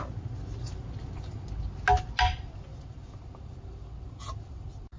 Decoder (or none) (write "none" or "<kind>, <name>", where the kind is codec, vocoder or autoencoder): none